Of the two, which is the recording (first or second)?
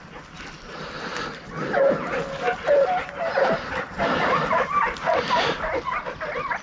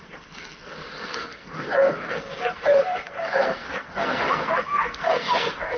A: first